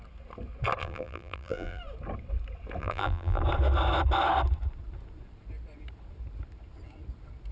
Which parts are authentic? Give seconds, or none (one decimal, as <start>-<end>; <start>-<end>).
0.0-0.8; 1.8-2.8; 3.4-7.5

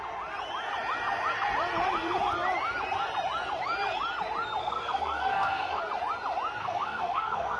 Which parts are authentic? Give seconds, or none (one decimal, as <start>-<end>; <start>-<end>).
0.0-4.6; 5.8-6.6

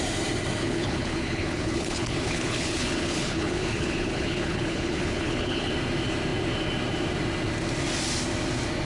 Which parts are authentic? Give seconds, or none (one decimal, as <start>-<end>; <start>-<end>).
0.0-0.6; 5.7-8.8

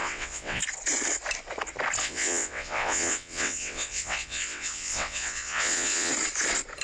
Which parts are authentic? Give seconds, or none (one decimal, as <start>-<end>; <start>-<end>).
0.6-2.0; 6.1-6.8